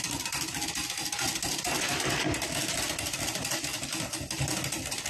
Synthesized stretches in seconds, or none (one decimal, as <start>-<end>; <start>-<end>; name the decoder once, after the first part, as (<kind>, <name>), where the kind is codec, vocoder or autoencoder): none